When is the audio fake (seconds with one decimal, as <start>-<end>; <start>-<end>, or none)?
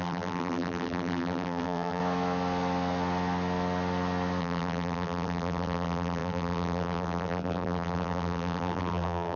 0.0-2.0; 4.4-9.4